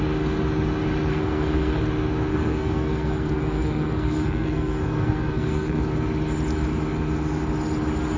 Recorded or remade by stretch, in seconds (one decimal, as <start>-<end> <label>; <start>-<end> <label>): 0.0-1.1 recorded; 1.1-1.8 remade; 1.8-2.3 recorded; 2.3-5.8 remade; 5.8-8.2 recorded